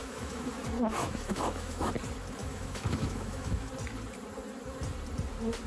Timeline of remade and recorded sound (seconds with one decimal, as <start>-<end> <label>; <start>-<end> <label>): 0.0-0.6 remade; 0.6-1.0 recorded; 1.0-1.9 remade; 1.9-2.4 recorded; 2.4-3.7 remade; 3.7-5.7 recorded